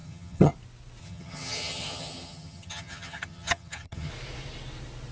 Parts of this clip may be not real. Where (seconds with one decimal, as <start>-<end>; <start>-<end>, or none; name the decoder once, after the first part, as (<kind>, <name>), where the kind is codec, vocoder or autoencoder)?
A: 0.0-0.5 (vocoder, HiFi-GAN); 1.0-4.1